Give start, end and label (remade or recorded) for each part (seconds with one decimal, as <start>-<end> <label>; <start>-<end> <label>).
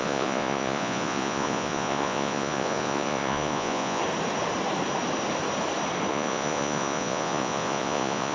0.0-4.0 remade; 4.0-6.1 recorded; 6.1-8.3 remade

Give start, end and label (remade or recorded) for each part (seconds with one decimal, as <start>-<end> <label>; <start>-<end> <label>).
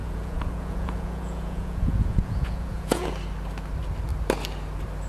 0.0-3.1 remade; 3.1-5.1 recorded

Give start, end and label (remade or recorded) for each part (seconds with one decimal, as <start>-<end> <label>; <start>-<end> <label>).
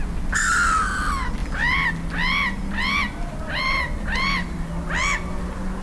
0.0-5.8 recorded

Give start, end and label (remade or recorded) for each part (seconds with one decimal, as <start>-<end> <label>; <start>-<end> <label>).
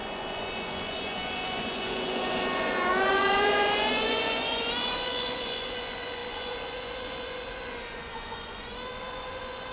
0.0-9.7 remade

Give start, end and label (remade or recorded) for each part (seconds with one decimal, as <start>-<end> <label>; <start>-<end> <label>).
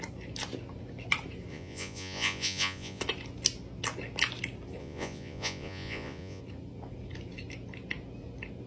0.0-1.5 recorded; 1.5-3.0 remade; 3.0-4.8 recorded; 4.8-6.4 remade; 6.4-8.7 recorded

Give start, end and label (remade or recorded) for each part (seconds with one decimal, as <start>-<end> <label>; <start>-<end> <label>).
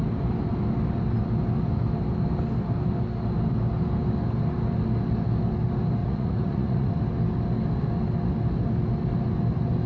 0.0-6.0 recorded; 6.0-6.9 remade; 6.9-9.9 recorded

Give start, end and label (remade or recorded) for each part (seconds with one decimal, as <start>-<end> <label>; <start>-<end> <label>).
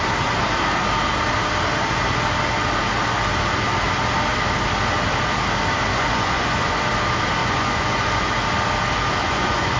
0.0-5.9 recorded; 5.9-6.8 remade; 6.8-7.4 recorded; 7.4-8.3 remade; 8.3-9.2 recorded; 9.2-9.8 remade